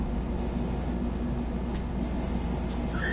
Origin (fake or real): real